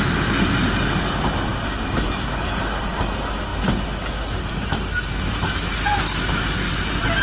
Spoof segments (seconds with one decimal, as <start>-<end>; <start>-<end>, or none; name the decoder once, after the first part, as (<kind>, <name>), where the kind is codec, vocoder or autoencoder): none